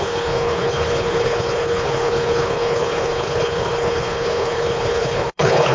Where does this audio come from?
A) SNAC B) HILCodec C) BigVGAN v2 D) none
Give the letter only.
B